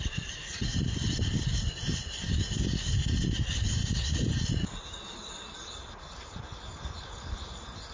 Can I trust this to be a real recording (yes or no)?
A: yes